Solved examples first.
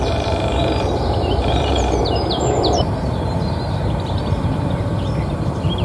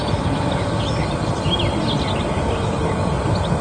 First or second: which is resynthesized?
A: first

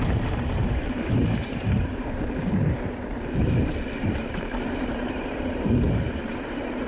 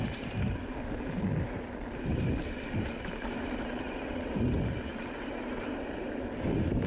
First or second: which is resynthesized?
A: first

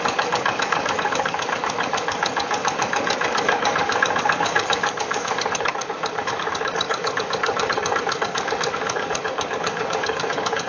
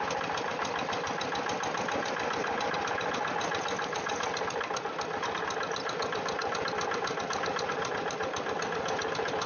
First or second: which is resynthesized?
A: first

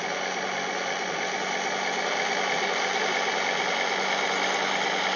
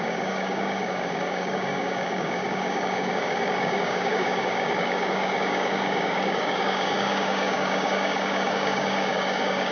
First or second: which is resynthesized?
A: second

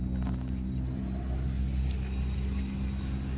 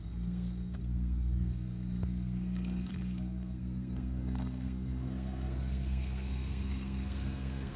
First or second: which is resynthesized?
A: second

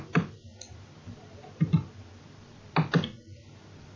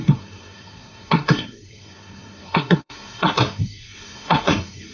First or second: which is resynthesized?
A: second